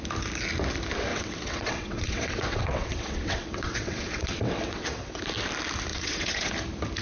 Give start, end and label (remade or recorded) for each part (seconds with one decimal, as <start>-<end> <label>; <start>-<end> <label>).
0.0-1.1 recorded; 1.1-5.2 remade; 5.2-5.9 recorded; 5.9-6.5 remade; 6.5-7.0 recorded